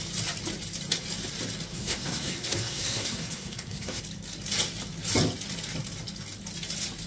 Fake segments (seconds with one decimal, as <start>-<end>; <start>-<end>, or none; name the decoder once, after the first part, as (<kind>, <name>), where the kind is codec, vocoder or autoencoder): 1.7-4.0 (codec, SNAC)